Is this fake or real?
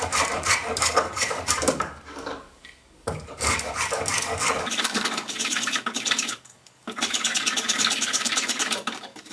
fake